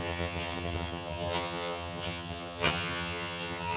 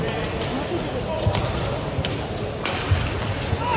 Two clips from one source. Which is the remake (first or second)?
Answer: first